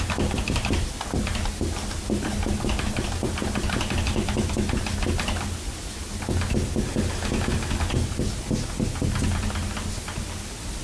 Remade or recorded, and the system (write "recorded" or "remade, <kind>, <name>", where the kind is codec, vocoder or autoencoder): recorded